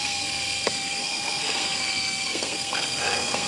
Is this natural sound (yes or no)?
no